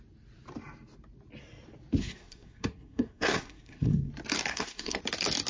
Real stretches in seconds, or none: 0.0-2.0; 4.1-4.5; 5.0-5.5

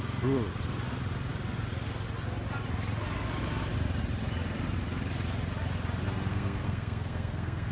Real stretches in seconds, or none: 0.0-6.3

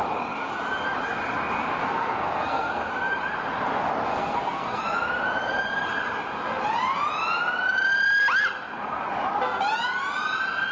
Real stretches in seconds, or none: 0.0-1.8; 2.9-4.1; 4.8-10.7

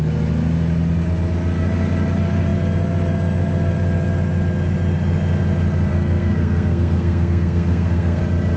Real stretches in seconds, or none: 0.0-5.9; 8.2-8.6

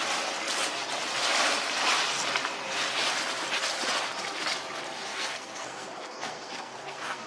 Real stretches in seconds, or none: 0.0-5.1

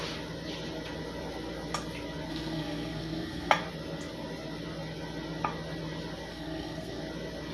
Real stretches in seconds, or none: 0.0-2.3; 3.5-6.3; 7.0-7.5